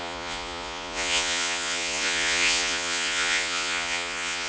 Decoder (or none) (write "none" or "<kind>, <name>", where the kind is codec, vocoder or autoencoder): vocoder, Vocos